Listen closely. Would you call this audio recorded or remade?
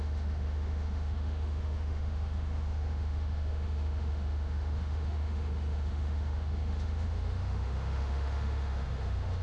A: remade